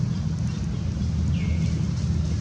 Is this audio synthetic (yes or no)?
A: no